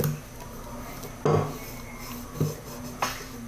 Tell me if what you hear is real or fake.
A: real